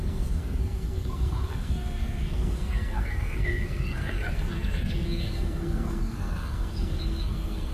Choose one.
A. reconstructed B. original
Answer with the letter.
A